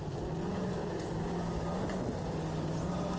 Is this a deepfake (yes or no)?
no